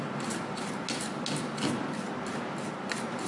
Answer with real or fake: real